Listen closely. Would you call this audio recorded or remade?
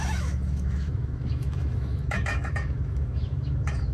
remade